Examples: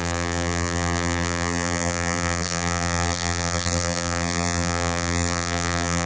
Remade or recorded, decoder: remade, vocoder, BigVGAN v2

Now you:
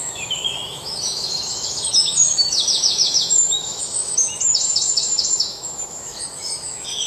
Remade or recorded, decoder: remade, autoencoder, DAC-VAE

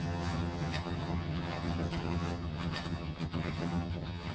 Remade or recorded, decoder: remade, vocoder, HiFi-GAN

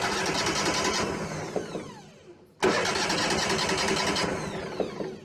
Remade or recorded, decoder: recorded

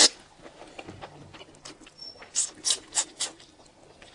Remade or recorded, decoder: recorded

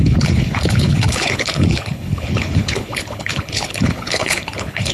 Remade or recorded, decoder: remade, codec, HILCodec